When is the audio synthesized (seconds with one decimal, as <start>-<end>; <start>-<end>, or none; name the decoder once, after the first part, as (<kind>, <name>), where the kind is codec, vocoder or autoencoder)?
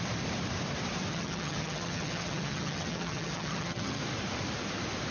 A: 1.1-4.0 (vocoder, HiFi-GAN)